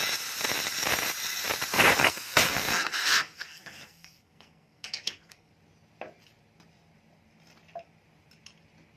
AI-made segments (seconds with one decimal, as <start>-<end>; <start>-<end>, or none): 1.7-5.5